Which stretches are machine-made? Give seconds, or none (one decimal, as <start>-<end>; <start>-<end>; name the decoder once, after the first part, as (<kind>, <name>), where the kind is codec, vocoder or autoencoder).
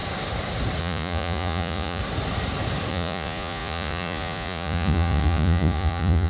0.8-2.0 (vocoder, Vocos); 2.9-6.3